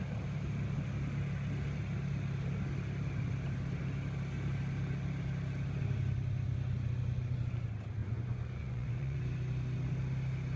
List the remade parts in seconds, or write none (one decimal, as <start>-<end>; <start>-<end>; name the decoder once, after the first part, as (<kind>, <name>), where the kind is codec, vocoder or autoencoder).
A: 8.0-9.2 (vocoder, Vocos)